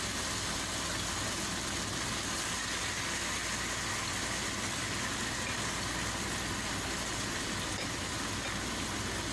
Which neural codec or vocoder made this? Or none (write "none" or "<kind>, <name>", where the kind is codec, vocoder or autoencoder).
none